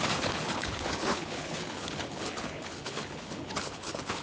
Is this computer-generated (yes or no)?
yes